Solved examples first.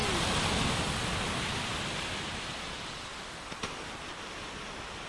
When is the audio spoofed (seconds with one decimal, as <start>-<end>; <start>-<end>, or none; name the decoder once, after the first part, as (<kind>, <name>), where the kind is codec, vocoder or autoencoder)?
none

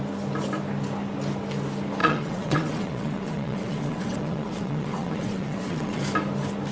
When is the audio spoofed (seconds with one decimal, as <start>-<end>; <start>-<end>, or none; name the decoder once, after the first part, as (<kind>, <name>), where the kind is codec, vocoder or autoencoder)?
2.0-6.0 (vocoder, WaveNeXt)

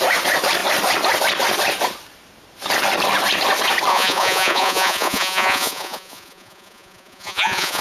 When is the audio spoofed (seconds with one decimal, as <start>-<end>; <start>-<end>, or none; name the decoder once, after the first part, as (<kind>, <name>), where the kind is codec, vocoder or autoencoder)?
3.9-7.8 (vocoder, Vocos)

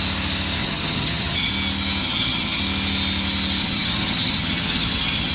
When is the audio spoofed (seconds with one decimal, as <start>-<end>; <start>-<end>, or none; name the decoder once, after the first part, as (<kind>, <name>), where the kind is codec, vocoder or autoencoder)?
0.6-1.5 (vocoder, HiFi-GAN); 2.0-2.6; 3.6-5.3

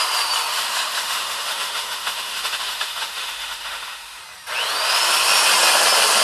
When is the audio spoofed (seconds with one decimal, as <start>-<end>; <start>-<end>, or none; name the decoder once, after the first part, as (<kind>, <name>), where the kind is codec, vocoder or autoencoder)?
0.5-4.2 (autoencoder, DAC-VAE)